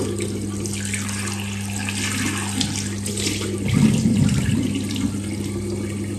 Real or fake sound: real